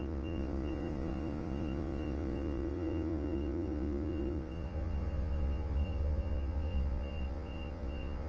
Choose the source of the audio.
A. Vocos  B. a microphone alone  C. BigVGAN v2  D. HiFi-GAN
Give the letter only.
A